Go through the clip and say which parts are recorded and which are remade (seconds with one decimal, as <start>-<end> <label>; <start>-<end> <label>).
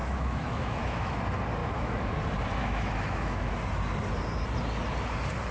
0.0-1.2 remade; 1.2-1.6 recorded; 1.6-2.2 remade; 2.2-2.6 recorded; 2.6-3.5 remade; 3.5-5.5 recorded